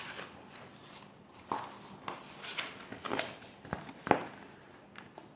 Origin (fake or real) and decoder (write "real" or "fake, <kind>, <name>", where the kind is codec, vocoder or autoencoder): real